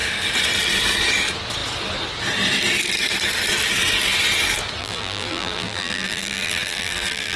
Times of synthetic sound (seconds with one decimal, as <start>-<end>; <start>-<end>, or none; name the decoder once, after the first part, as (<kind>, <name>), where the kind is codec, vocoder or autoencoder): 4.8-7.4 (vocoder, BigVGAN v2)